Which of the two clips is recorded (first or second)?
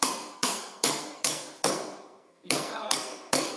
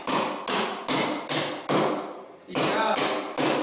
second